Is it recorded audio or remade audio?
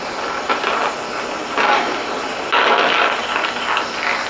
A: recorded